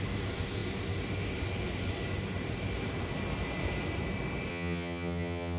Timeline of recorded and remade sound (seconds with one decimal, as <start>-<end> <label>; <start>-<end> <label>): 0.0-4.5 recorded; 4.5-5.6 remade